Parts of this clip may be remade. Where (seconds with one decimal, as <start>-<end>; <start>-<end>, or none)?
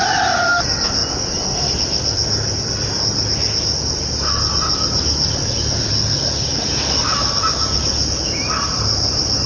none